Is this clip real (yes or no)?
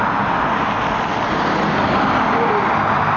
yes